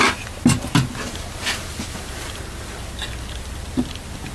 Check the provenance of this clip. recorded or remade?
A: recorded